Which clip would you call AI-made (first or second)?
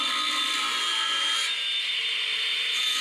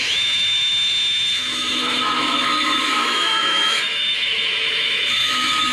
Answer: second